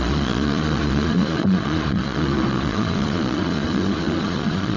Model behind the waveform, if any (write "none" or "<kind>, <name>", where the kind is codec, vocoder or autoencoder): vocoder, Vocos